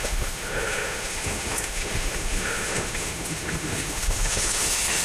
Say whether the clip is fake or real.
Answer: fake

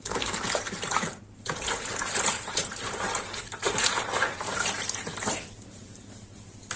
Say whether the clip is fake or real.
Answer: fake